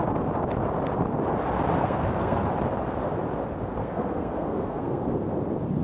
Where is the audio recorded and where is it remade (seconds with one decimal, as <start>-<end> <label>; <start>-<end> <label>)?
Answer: 0.0-1.8 recorded; 1.8-2.5 remade; 2.5-3.8 recorded; 3.8-5.3 remade; 5.3-5.8 recorded